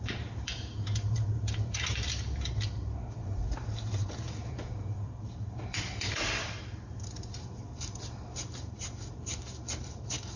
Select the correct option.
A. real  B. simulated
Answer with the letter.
B